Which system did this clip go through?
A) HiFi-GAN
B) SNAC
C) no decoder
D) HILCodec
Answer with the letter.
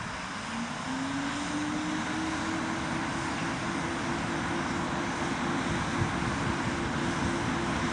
C